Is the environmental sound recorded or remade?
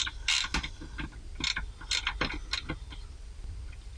recorded